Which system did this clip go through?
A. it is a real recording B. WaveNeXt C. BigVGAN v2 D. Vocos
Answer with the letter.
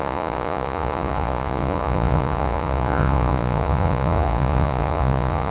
D